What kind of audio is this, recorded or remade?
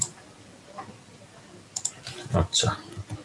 remade